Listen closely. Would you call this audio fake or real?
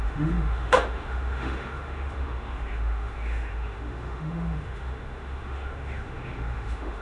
fake